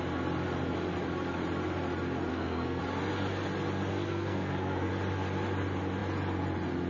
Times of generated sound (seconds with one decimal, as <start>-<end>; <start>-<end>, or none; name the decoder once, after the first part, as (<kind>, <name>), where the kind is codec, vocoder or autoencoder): 2.3-2.8 (codec, SNAC); 3.9-4.9